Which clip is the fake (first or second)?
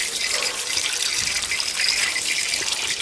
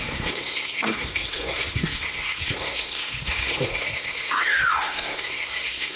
second